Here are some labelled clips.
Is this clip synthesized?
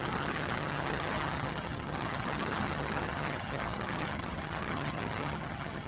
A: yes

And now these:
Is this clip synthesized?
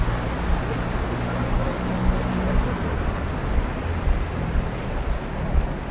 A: no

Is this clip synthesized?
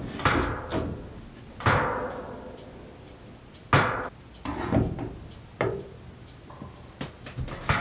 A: no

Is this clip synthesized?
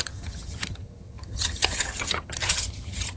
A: yes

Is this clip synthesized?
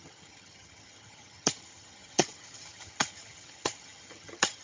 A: yes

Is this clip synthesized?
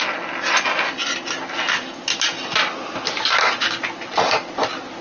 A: no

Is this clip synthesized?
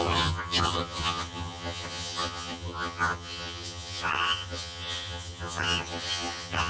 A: yes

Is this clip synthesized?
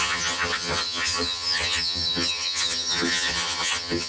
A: yes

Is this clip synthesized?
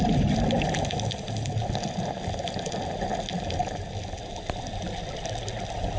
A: no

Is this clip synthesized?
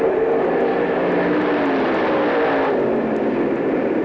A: no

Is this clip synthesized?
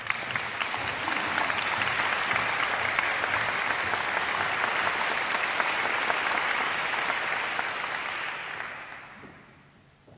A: no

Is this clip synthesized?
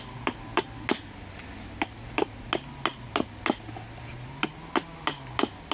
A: no